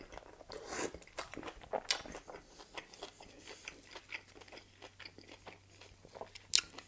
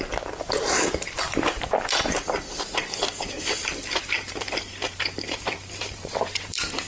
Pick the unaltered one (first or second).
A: first